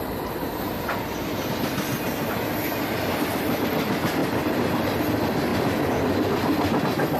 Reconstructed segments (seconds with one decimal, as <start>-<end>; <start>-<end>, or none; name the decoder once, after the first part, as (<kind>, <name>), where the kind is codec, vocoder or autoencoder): none